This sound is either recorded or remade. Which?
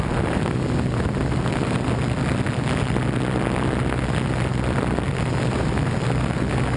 recorded